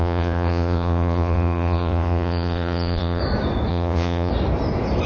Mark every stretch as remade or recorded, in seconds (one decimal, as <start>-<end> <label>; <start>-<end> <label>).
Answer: 0.0-3.2 remade; 3.2-3.7 recorded; 3.7-4.3 remade; 4.3-5.1 recorded